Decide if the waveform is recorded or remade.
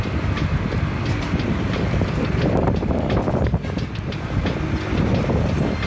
recorded